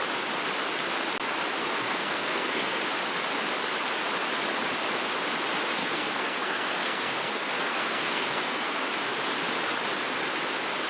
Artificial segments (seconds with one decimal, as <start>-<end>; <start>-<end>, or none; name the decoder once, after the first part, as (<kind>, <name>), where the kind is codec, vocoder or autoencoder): 1.6-2.8 (codec, SNAC); 5.8-8.9